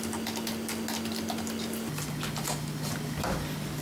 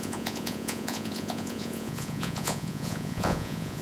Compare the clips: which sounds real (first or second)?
first